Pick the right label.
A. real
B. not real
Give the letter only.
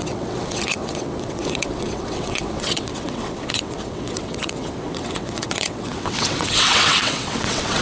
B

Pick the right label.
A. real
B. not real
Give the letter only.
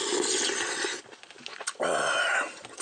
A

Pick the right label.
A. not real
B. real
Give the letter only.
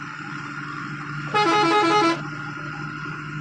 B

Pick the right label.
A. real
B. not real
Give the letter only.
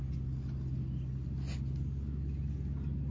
A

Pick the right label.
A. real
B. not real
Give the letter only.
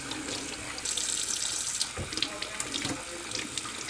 A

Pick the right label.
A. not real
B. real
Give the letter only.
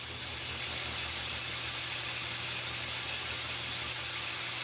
B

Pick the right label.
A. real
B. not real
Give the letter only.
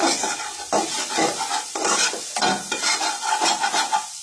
A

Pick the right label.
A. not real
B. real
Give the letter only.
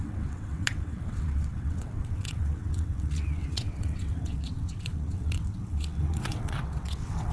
A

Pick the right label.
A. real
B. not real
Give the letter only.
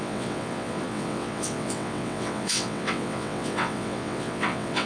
B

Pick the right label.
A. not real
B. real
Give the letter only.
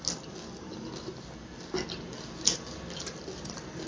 B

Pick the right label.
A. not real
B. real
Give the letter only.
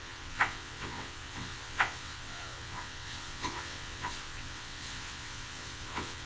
A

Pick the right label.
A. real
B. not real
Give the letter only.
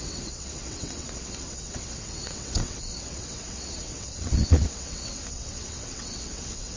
B